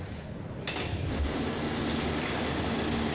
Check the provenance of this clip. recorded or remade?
recorded